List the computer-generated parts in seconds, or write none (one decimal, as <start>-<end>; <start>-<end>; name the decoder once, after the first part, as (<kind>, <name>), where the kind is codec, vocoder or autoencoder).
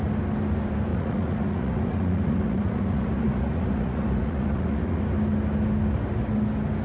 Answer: 0.9-5.0 (vocoder, Vocos)